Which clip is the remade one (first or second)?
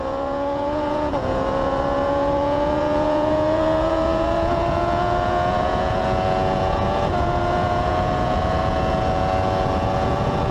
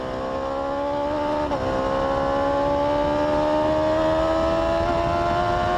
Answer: first